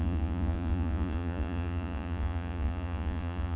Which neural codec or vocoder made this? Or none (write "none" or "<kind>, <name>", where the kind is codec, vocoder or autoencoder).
vocoder, Vocos